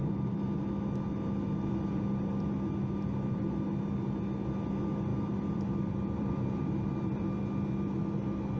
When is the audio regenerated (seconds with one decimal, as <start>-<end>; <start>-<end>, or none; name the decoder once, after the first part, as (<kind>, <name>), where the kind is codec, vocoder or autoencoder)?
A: 5.1-7.4 (vocoder, BigVGAN v2)